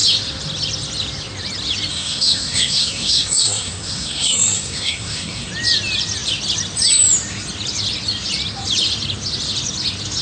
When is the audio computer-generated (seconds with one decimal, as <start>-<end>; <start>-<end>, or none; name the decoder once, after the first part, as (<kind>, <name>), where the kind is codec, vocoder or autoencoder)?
1.9-5.5 (codec, SNAC)